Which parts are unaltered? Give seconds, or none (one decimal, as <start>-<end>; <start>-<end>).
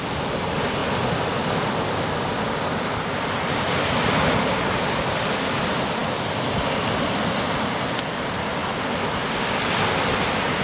0.0-10.6